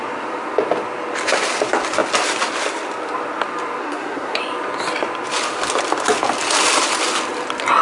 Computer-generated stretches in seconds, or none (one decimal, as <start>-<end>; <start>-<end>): 3.8-4.4